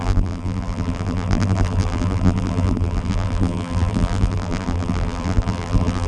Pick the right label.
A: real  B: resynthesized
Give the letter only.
B